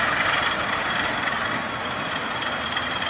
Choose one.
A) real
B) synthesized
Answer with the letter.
A